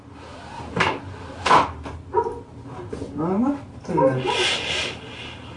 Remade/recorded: recorded